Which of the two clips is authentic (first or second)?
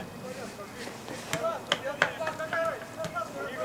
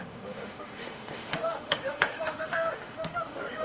first